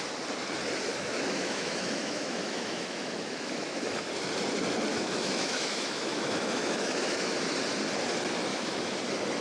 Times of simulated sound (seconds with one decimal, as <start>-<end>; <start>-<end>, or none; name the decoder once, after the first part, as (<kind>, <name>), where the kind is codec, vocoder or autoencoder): 0.9-4.1 (autoencoder, DAC-VAE); 4.9-7.4; 8.5-9.0